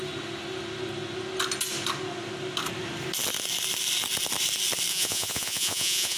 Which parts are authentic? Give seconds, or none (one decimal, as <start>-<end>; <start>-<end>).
0.0-4.9